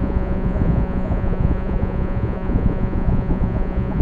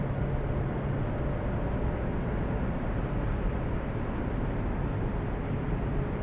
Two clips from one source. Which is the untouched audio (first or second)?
second